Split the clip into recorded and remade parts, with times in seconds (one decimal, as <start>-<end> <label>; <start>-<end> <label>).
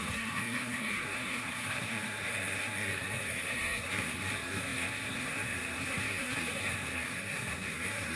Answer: 0.0-8.2 remade